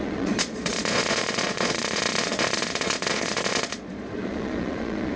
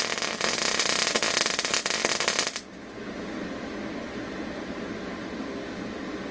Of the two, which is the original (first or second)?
second